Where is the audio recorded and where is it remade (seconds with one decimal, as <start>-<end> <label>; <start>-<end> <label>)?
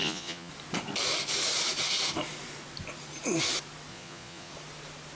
0.0-0.5 remade; 0.5-3.9 recorded; 3.9-4.5 remade; 4.5-5.1 recorded